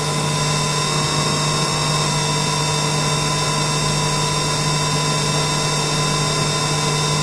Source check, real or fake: real